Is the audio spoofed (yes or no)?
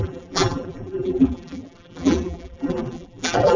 yes